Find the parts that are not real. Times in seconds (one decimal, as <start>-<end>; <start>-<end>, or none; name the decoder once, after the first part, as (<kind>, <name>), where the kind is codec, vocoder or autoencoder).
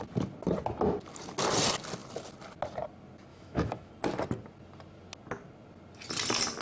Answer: 3.3-3.9 (autoencoder, DAC-VAE)